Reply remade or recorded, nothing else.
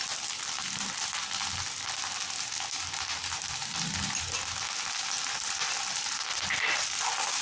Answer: recorded